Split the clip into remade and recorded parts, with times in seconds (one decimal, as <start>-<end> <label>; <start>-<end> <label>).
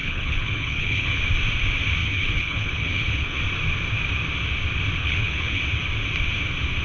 0.0-1.2 remade; 1.2-2.0 recorded; 2.0-3.4 remade; 3.4-5.0 recorded; 5.0-5.6 remade; 5.6-6.8 recorded